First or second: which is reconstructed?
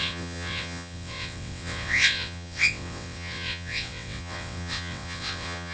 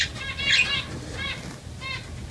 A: first